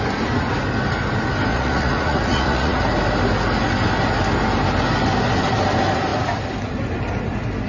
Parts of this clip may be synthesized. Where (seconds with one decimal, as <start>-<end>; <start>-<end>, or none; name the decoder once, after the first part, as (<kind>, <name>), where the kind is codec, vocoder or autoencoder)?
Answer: 1.5-2.8 (vocoder, Vocos)